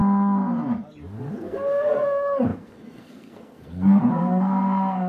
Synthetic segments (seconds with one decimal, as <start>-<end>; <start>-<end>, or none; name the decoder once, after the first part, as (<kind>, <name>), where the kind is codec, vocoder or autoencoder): 1.2-5.1 (codec, SNAC)